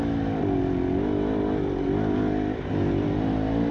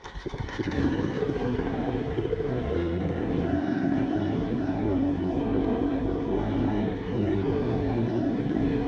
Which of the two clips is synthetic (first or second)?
second